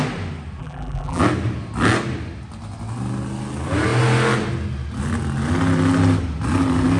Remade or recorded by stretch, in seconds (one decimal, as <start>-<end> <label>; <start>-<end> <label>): 0.0-0.6 recorded; 0.6-1.2 remade; 1.2-7.0 recorded

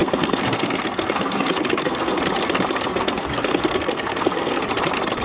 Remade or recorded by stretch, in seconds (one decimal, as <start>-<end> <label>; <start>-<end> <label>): 0.0-2.2 remade; 2.2-2.9 recorded; 2.9-4.6 remade; 4.6-5.2 recorded

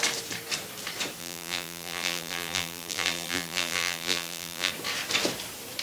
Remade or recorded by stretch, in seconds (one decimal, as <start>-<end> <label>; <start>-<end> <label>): 0.0-1.2 recorded; 1.2-4.7 remade; 4.7-5.8 recorded

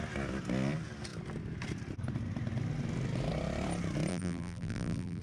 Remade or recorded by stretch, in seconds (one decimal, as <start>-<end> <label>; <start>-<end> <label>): 0.0-4.1 recorded; 4.1-5.2 remade

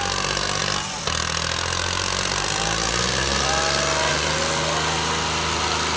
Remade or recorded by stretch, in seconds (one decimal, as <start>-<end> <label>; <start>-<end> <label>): 0.0-6.0 recorded